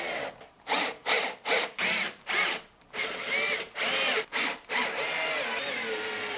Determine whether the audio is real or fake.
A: real